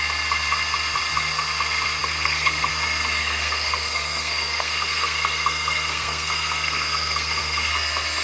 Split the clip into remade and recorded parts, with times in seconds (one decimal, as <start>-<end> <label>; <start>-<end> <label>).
0.0-2.0 recorded; 2.0-2.7 remade; 2.7-3.2 recorded; 3.2-7.7 remade; 7.7-8.2 recorded